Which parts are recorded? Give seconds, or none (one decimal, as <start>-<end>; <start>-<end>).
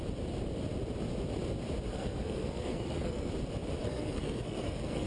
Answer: 0.0-1.9; 3.3-3.8